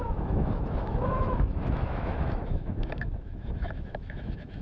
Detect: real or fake fake